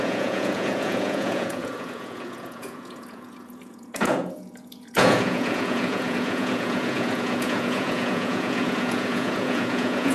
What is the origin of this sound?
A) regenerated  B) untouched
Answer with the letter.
A